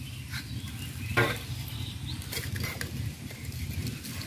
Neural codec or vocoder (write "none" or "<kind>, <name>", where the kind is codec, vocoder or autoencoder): none